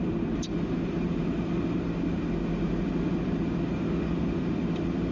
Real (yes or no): yes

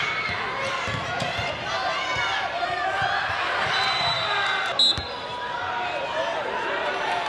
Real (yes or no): yes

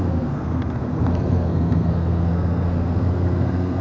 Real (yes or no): no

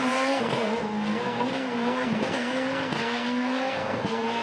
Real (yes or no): no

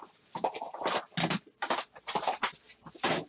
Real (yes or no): yes